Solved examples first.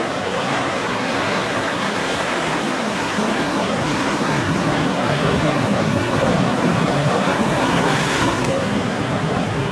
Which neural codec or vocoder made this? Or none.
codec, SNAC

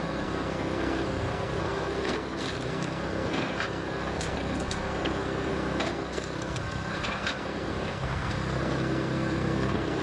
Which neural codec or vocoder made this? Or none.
codec, SNAC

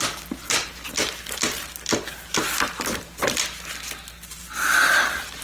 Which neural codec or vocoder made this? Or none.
none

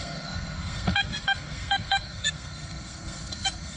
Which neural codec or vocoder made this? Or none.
codec, SNAC